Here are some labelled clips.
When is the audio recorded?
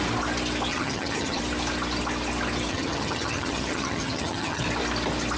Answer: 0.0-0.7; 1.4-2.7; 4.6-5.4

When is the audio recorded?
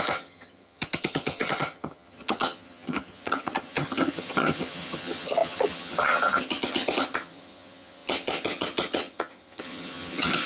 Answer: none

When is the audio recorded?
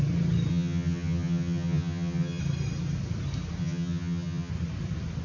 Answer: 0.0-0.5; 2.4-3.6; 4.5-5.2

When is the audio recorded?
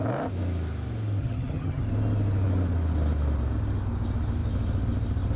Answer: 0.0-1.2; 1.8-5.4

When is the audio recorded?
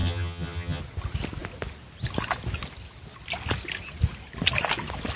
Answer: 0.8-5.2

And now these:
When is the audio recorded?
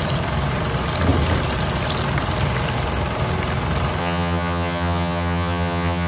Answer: 0.0-4.0